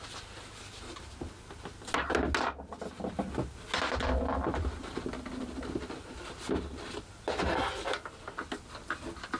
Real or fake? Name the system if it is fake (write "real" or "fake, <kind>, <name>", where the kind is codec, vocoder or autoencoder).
real